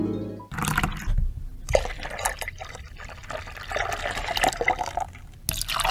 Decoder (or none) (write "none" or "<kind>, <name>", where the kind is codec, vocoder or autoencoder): none